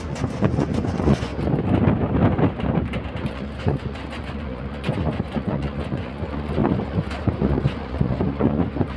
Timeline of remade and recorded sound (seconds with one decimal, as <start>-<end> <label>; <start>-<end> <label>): 0.0-1.3 remade; 1.3-3.3 recorded; 3.3-9.0 remade

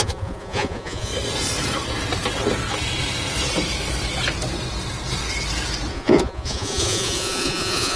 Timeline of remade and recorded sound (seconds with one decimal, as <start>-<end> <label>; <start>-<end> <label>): 0.0-1.1 remade; 1.1-5.9 recorded; 5.9-8.0 remade